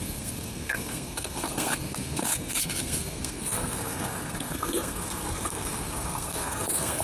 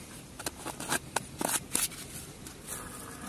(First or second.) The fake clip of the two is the first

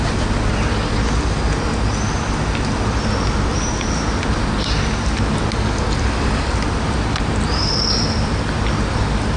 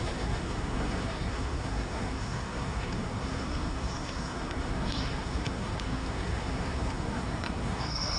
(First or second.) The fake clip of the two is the second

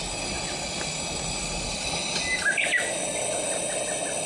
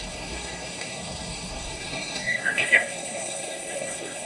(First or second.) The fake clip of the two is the second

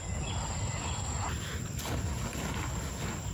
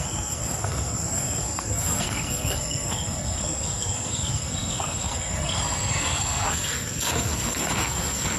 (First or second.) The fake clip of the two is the second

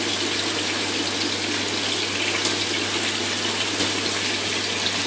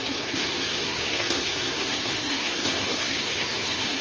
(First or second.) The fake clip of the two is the second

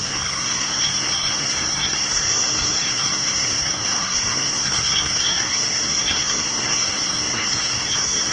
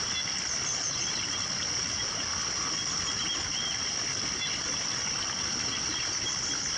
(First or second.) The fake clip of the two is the first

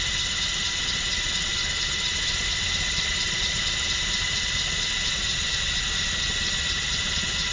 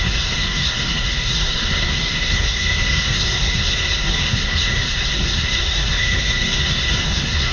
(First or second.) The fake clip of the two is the second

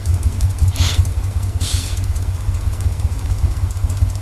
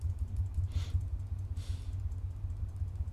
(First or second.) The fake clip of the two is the first